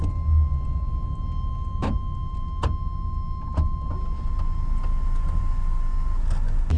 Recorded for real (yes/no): yes